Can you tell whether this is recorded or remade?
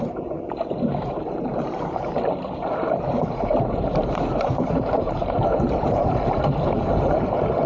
remade